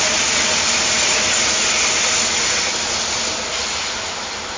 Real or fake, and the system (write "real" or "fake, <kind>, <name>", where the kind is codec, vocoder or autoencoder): real